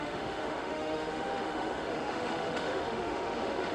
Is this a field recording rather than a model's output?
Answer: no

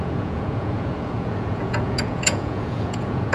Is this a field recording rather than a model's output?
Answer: no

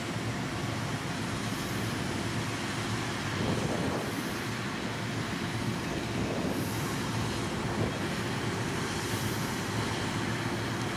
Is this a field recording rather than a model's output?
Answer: yes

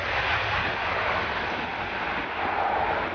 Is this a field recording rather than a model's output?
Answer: yes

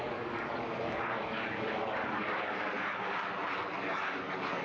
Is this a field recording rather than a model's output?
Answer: no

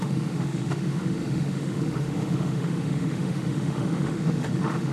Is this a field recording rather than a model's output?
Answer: no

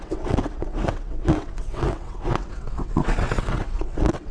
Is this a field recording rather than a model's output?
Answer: no